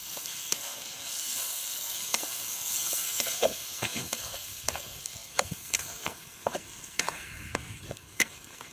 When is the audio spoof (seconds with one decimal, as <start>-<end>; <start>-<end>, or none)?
0.0-8.7